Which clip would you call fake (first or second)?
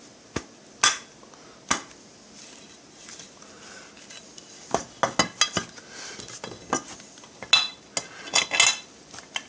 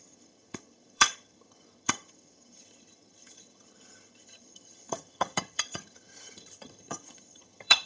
second